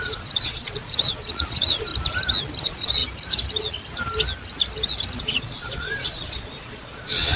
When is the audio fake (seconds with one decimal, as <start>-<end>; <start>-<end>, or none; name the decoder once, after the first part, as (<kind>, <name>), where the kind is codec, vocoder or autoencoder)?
0.0-1.9 (vocoder, Vocos); 2.6-3.0; 5.2-7.4